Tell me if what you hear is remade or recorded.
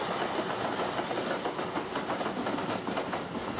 recorded